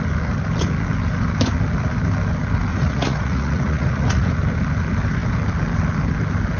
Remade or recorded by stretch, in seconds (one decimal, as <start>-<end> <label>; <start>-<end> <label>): 0.0-2.7 recorded; 2.7-4.3 remade; 4.3-6.6 recorded